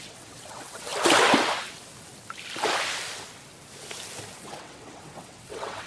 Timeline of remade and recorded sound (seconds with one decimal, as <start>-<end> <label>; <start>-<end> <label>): 0.0-0.9 remade; 0.9-4.4 recorded; 4.4-5.9 remade